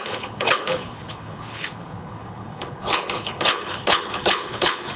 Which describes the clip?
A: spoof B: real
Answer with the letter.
A